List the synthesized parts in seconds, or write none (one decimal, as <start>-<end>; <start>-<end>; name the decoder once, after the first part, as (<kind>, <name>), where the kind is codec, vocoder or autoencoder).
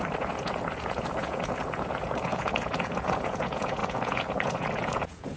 0.0-5.4 (vocoder, Vocos)